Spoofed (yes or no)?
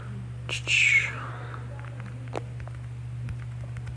no